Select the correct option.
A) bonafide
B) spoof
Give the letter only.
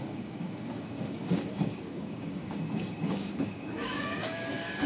B